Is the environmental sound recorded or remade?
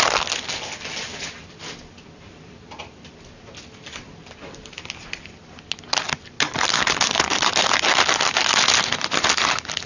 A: recorded